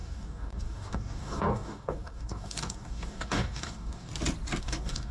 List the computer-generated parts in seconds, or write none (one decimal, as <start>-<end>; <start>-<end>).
0.0-4.1; 4.6-5.1